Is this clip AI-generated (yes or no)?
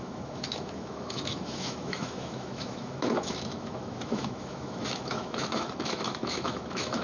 yes